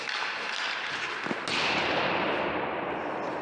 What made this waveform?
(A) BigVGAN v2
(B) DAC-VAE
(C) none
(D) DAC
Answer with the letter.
C